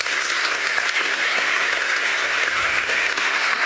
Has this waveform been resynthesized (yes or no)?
yes